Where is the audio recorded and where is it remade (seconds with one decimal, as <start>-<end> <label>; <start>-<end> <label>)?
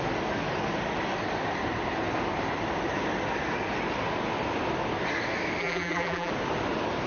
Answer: 0.0-5.6 recorded; 5.6-6.3 remade; 6.3-7.1 recorded